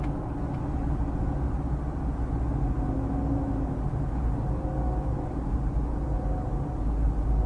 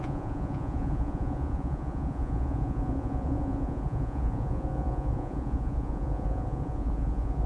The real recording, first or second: first